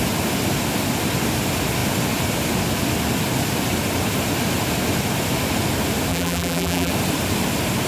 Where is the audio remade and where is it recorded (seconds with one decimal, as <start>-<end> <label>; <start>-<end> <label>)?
0.0-6.1 recorded; 6.1-6.9 remade; 6.9-7.9 recorded